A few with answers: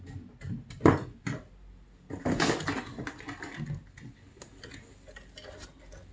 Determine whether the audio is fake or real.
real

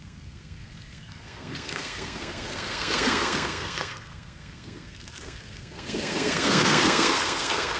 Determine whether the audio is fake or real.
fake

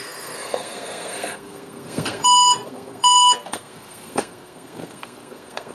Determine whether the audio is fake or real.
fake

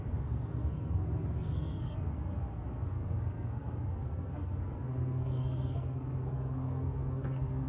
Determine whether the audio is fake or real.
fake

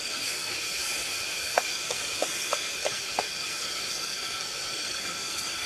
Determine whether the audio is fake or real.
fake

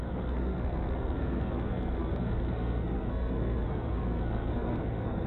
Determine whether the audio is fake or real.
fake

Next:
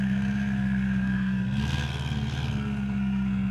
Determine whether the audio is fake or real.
fake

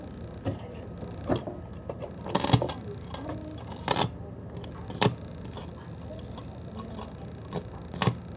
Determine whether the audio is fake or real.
real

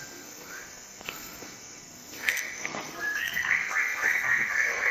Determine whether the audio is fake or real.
fake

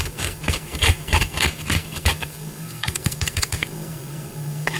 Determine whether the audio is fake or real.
fake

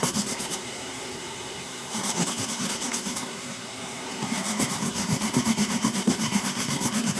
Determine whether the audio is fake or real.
fake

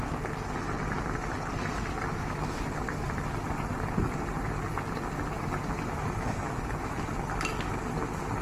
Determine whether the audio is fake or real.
real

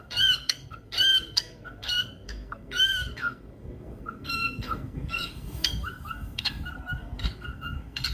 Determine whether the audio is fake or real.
fake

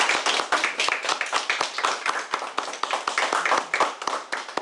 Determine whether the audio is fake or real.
real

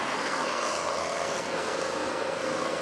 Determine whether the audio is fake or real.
fake